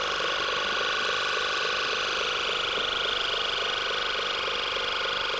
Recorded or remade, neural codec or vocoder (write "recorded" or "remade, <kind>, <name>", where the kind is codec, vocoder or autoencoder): recorded